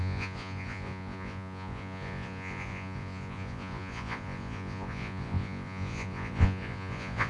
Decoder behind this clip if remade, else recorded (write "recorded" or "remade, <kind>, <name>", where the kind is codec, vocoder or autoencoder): remade, vocoder, Vocos